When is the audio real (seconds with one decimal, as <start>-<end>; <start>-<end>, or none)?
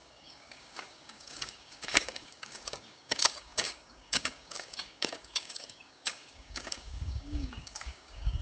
none